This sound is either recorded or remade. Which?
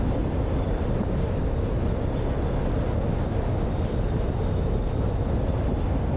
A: recorded